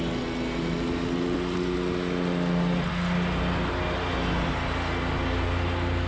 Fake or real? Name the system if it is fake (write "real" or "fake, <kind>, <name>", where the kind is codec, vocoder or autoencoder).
real